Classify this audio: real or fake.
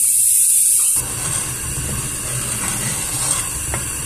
real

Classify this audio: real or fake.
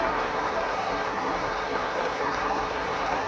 fake